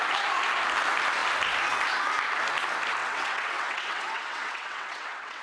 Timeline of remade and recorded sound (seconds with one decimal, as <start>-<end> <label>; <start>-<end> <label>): 0.0-3.0 recorded; 3.0-5.4 remade